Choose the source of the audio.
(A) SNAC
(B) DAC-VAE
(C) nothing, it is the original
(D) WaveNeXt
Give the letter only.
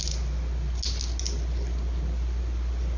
C